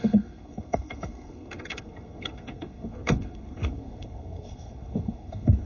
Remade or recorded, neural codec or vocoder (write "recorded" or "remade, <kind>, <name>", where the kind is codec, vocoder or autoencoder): remade, codec, SNAC